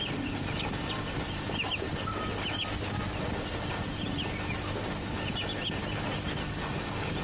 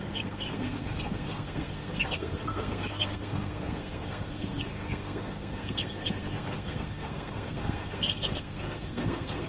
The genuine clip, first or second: first